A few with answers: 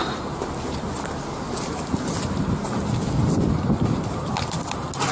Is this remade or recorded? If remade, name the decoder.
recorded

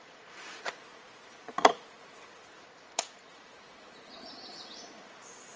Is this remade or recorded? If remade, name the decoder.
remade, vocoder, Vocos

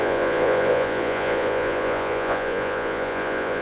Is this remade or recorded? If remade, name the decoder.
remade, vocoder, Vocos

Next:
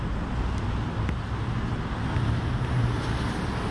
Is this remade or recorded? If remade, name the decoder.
recorded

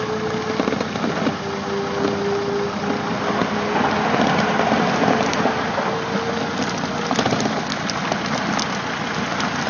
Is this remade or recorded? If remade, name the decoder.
recorded